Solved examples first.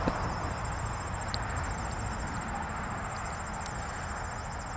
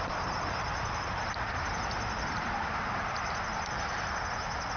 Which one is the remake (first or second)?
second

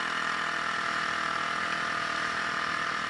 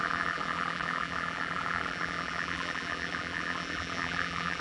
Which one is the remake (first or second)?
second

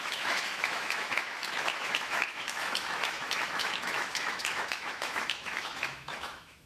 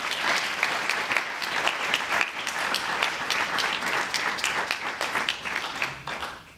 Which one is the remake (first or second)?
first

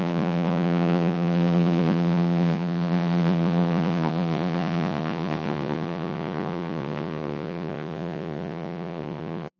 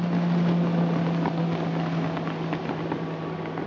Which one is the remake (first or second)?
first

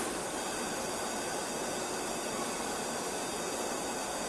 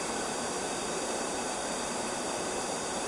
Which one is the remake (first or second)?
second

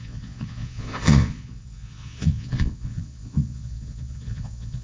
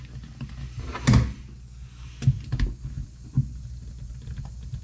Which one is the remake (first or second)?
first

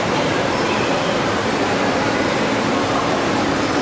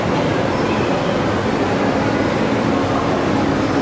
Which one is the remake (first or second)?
first